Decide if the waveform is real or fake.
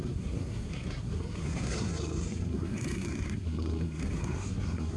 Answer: fake